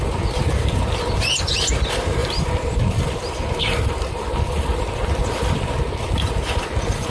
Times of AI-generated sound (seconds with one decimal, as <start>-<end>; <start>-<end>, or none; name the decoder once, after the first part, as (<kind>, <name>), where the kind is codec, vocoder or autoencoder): 2.2-5.7 (vocoder, BigVGAN v2)